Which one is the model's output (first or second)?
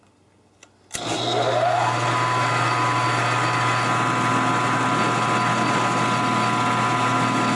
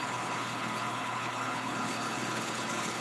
second